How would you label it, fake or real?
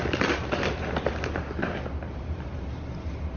real